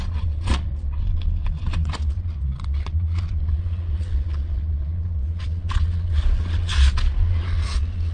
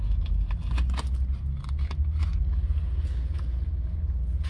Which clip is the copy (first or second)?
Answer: first